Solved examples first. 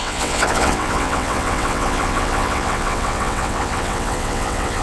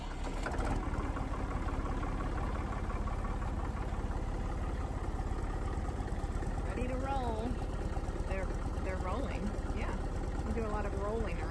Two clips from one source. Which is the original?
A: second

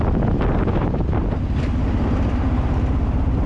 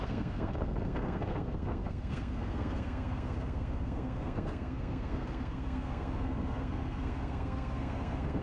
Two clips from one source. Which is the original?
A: first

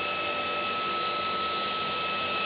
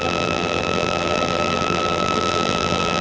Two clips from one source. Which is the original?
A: first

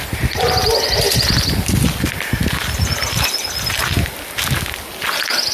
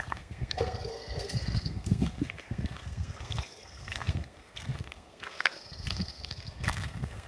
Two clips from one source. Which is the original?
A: first